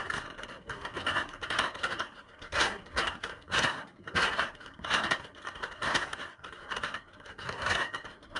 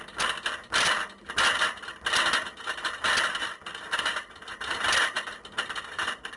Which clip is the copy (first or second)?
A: first